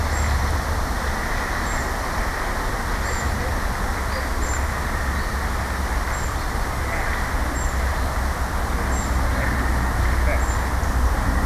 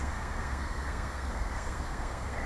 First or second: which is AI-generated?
second